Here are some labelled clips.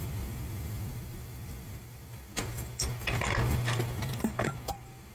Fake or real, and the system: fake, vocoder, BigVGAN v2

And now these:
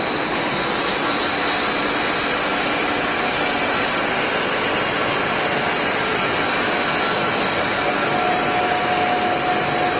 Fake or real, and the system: real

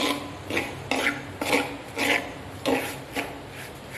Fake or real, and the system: real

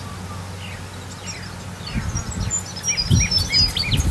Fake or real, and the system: real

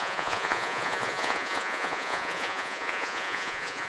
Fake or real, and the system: fake, vocoder, Vocos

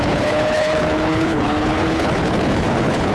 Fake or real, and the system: fake, codec, HILCodec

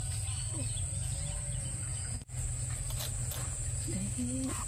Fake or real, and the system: real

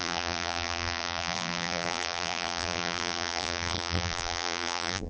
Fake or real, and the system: fake, vocoder, BigVGAN v2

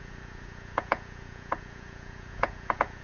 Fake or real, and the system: fake, vocoder, Vocos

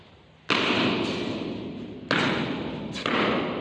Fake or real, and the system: real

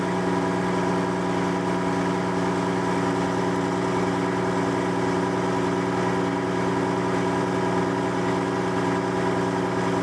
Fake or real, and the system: real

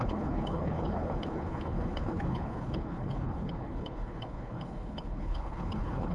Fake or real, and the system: fake, codec, HILCodec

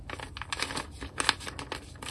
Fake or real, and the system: real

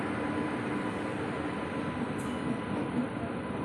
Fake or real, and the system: real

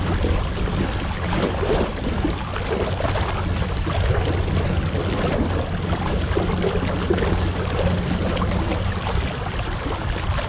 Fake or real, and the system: real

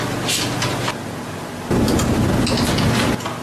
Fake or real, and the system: real